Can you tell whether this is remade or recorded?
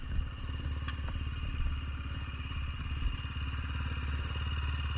recorded